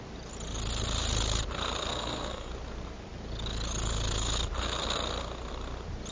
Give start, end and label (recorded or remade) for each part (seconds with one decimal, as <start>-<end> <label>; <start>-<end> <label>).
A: 0.0-1.9 recorded; 1.9-2.5 remade; 2.5-6.1 recorded